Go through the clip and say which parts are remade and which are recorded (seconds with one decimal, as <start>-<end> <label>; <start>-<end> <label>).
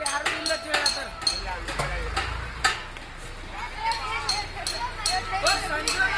0.0-6.2 recorded